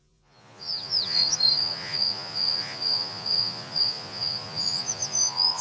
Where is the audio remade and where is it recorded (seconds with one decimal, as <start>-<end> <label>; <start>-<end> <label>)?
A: 0.0-5.6 remade